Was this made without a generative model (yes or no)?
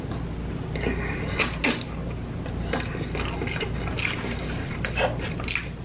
yes